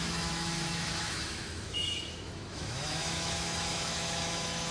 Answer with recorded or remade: remade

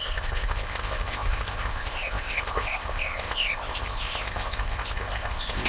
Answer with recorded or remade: remade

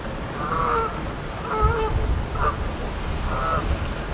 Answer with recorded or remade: recorded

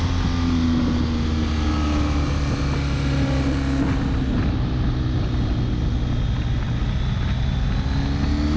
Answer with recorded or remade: recorded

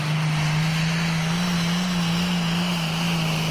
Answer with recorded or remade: recorded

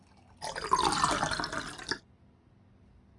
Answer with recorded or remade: recorded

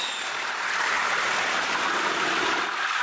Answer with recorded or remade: remade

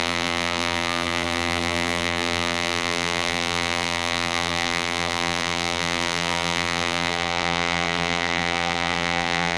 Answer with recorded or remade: remade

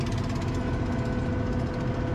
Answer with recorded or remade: recorded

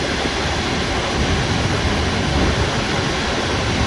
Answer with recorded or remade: recorded